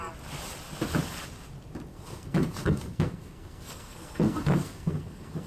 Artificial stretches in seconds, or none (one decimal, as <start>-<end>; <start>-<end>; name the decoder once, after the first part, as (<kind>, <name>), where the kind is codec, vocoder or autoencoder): 1.9-5.5 (codec, SNAC)